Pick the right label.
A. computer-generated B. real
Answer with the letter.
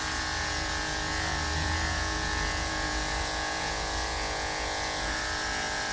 A